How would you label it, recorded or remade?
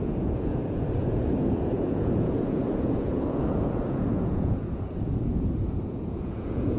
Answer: remade